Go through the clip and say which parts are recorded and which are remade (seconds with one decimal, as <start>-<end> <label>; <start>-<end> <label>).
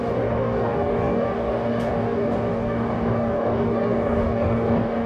0.0-5.1 remade